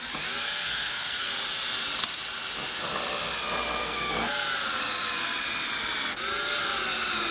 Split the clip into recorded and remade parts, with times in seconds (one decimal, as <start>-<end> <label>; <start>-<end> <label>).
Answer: 0.0-0.4 recorded; 0.4-1.3 remade; 1.3-3.8 recorded; 3.8-4.3 remade; 4.3-7.3 recorded